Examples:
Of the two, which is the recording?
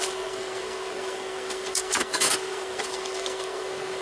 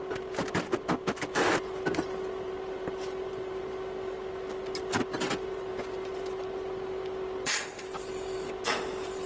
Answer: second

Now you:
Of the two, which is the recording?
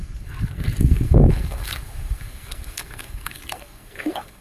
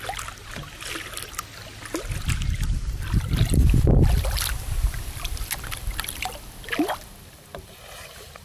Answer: second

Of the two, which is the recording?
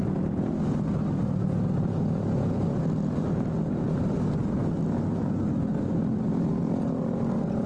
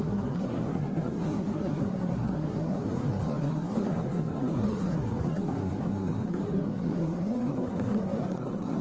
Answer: first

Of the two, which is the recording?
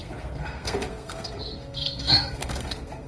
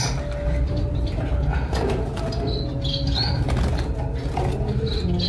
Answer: second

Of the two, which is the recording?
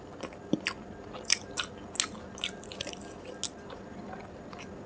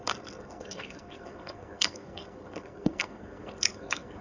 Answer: first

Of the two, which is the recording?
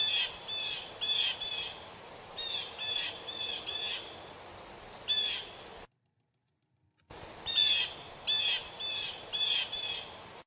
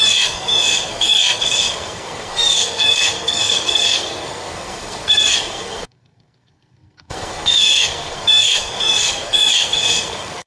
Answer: first